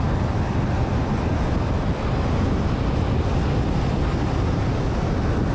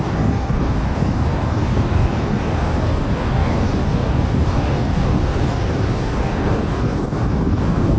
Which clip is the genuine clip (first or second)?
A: first